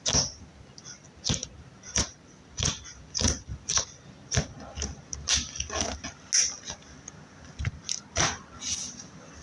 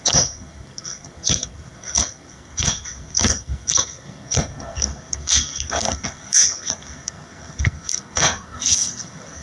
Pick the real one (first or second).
first